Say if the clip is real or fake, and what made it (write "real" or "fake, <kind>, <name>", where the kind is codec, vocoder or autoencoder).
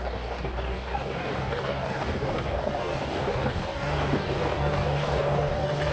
fake, codec, DAC